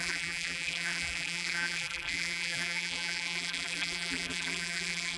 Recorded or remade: remade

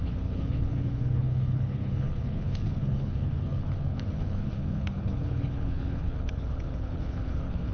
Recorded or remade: remade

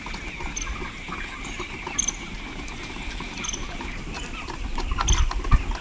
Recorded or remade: recorded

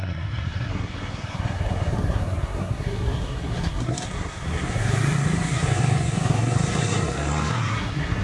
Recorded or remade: remade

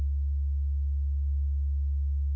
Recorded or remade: recorded